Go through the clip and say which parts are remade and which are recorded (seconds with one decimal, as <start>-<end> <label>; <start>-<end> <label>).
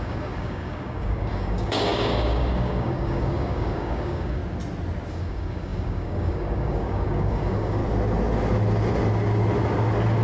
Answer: 0.0-4.4 remade; 4.4-5.1 recorded; 5.1-7.8 remade; 7.8-10.2 recorded